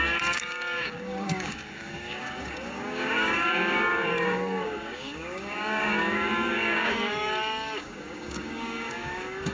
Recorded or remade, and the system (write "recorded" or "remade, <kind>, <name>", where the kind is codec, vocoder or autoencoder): remade, codec, DAC